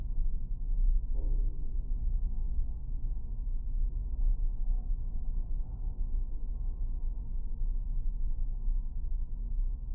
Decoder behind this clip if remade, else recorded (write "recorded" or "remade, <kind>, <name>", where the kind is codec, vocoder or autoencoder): recorded